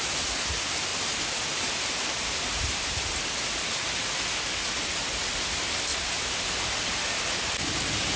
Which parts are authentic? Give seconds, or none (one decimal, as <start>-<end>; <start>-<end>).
0.0-0.9; 2.9-5.9; 7.2-8.2